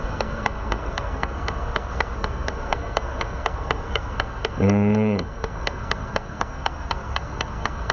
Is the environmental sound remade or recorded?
remade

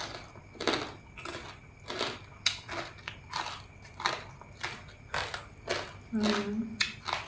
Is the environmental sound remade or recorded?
recorded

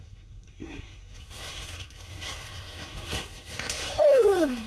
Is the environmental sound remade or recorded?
remade